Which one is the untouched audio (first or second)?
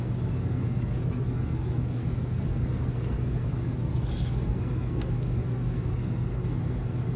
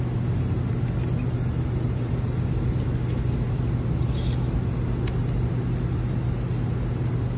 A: second